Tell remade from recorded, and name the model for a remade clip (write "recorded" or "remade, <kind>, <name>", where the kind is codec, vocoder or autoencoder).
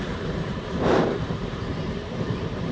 remade, vocoder, BigVGAN v2